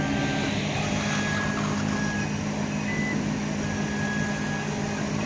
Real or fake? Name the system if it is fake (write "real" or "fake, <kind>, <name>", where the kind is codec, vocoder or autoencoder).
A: real